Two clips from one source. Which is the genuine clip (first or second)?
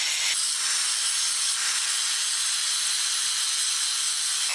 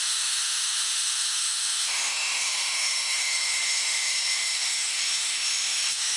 first